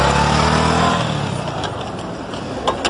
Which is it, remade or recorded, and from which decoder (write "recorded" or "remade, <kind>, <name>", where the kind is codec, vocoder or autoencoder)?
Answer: recorded